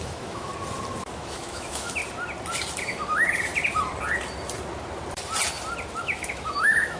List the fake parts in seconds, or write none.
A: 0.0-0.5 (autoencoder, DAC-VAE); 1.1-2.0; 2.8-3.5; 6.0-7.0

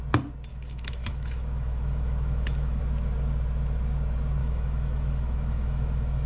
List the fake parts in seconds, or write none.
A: 0.5-2.8 (autoencoder, DAC-VAE); 4.4-6.3